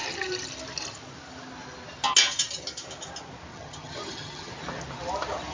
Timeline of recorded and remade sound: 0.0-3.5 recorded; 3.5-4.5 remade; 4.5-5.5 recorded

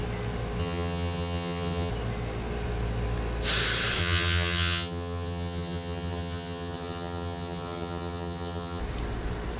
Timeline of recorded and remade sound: 0.0-0.6 recorded; 0.6-1.9 remade; 1.9-4.0 recorded; 4.0-8.8 remade; 8.8-9.6 recorded

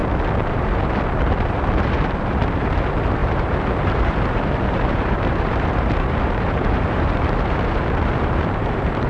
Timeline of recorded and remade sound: 0.0-0.5 recorded; 0.5-9.1 remade

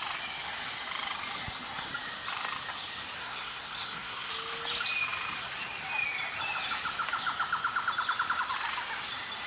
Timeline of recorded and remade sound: 0.0-3.2 recorded; 3.2-4.3 remade; 4.3-9.5 recorded

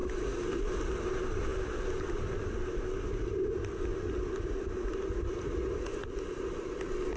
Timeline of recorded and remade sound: 0.0-7.2 recorded

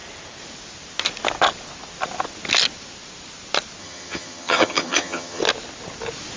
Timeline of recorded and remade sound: 0.0-3.8 recorded; 3.8-5.4 remade; 5.4-6.4 recorded

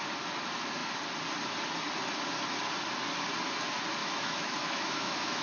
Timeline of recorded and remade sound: 0.0-4.0 recorded; 4.0-5.4 remade